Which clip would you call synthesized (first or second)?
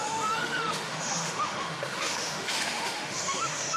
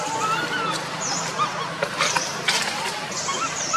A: first